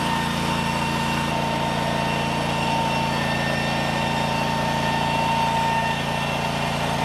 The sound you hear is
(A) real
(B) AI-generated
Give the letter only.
A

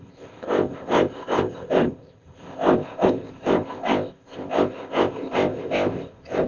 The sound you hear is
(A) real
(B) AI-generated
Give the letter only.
B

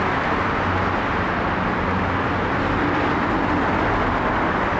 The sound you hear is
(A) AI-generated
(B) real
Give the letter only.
B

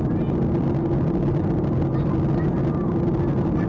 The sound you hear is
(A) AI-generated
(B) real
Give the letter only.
B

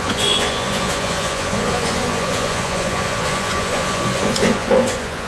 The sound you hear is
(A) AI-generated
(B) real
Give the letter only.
A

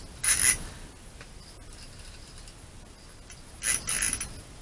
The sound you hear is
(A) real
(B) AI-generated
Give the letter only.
A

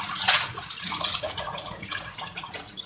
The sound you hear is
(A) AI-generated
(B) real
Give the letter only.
A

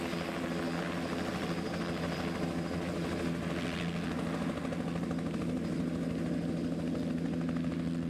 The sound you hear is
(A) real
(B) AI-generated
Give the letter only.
A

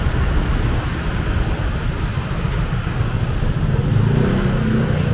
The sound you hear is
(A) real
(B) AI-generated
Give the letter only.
A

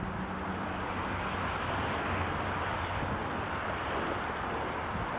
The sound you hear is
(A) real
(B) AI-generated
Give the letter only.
B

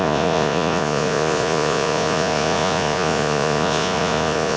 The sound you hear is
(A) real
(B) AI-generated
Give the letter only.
B